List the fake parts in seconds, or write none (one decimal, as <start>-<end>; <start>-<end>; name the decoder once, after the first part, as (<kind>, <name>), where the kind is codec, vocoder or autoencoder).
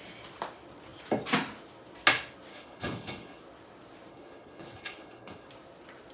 2.5-3.4 (codec, HILCodec); 4.1-5.5